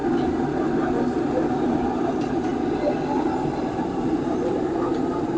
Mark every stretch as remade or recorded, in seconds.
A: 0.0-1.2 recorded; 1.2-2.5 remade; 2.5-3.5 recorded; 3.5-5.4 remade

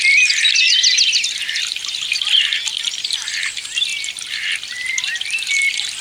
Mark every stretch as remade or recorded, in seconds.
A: 0.0-1.4 recorded; 1.4-2.2 remade; 2.2-3.9 recorded; 3.9-5.5 remade; 5.5-6.0 recorded

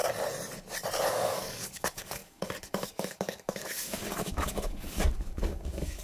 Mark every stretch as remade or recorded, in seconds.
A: 0.0-1.1 recorded; 1.1-6.0 remade